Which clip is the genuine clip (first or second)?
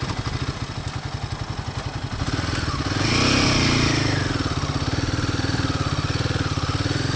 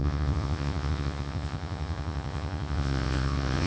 first